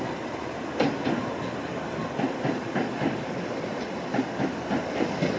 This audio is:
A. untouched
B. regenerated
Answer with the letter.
A